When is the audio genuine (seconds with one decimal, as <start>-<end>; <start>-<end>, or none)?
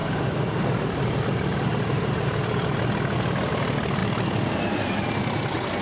0.0-5.8